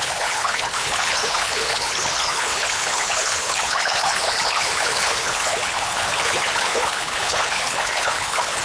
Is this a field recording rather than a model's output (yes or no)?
no